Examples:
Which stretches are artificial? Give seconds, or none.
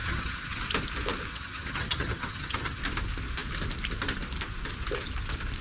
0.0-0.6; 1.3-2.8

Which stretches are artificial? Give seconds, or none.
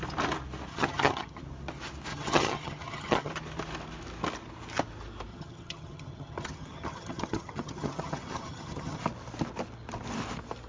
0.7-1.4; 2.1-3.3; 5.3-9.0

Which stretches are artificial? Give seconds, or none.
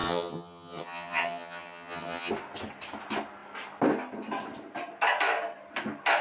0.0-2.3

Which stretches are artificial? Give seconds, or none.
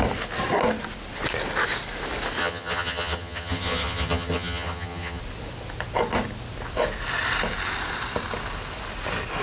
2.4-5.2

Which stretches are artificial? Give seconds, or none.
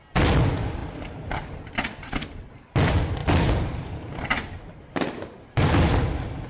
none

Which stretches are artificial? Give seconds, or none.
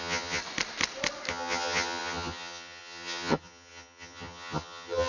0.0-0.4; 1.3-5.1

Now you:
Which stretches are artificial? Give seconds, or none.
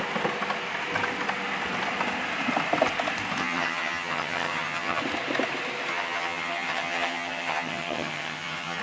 3.4-5.0; 5.9-8.8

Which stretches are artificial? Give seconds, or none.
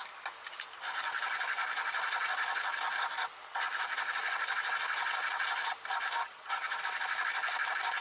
6.2-6.8